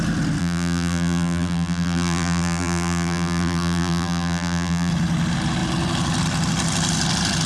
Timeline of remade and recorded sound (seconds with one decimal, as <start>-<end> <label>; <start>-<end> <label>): 0.0-0.4 recorded; 0.4-4.9 remade; 4.9-7.5 recorded